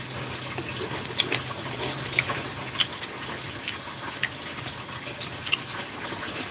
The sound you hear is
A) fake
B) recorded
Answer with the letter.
B